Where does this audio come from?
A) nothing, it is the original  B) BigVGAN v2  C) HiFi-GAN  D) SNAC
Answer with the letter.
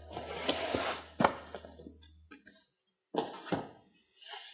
A